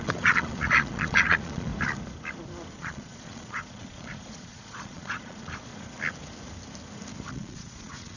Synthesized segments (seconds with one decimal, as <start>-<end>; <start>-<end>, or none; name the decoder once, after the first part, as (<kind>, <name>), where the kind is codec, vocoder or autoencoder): 0.0-1.7 (vocoder, Vocos); 2.7-5.7; 7.3-8.2